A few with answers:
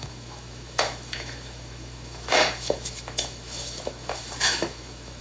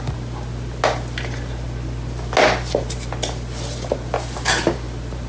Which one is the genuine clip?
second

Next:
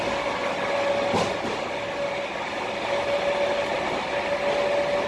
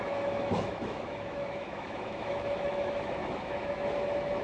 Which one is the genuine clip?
first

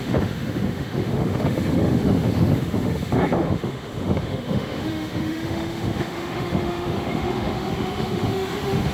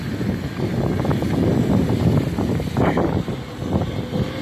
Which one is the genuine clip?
second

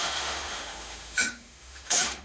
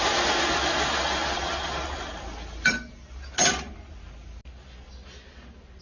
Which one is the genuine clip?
second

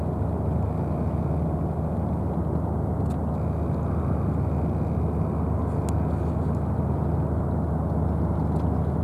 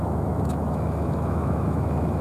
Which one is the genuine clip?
first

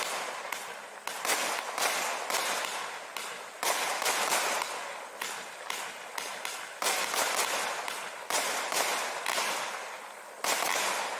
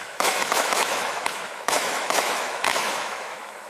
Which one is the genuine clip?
first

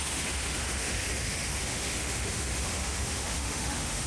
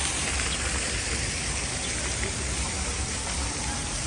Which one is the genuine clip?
second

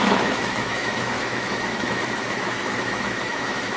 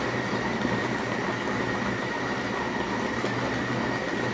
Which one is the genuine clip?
second